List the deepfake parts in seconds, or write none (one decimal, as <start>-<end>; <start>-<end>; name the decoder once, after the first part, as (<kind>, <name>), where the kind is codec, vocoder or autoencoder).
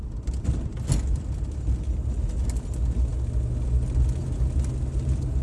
none